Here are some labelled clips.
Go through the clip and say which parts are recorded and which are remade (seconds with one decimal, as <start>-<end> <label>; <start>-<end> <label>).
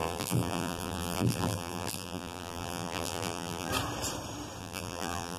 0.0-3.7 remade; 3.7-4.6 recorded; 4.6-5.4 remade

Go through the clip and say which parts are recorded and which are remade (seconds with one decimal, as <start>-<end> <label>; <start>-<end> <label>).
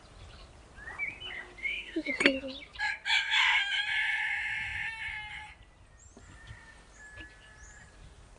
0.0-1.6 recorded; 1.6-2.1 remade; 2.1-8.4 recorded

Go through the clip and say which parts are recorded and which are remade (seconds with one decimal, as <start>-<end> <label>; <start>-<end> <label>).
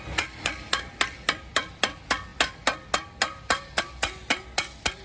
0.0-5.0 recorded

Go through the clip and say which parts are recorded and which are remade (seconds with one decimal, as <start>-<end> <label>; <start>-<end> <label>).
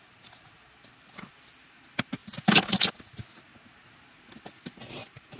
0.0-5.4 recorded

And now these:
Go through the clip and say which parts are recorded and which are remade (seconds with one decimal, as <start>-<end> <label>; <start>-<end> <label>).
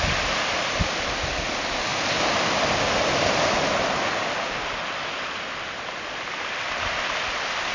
0.0-7.7 recorded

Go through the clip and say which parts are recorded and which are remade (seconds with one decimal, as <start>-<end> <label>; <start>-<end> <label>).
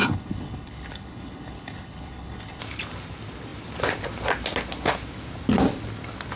0.0-2.6 remade; 2.6-6.4 recorded